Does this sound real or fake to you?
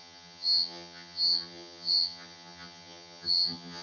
fake